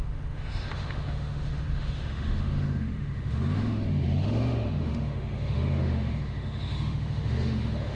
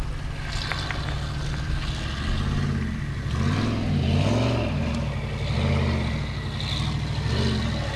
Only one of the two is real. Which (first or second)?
second